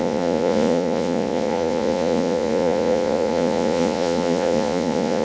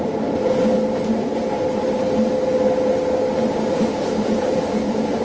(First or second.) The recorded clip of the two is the second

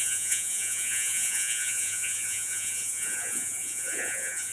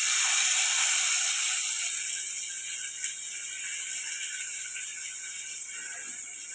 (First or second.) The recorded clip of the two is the second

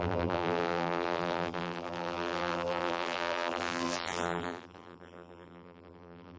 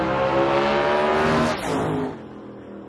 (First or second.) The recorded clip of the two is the second